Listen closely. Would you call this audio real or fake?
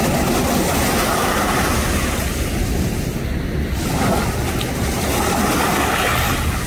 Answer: real